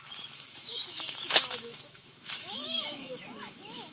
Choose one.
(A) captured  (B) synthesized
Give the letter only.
B